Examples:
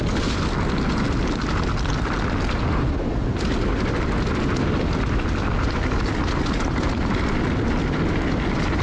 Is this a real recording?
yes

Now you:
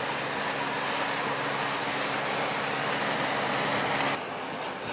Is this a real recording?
yes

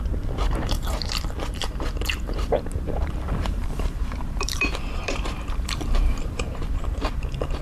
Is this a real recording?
no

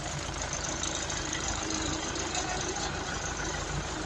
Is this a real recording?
no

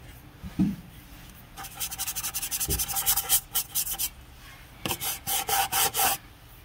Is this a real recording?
no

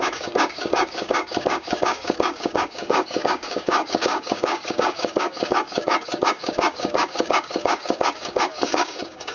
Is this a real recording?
no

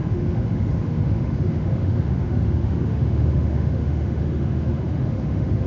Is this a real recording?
no